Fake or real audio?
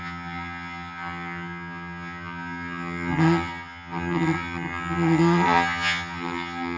fake